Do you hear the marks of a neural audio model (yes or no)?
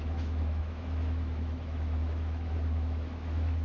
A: yes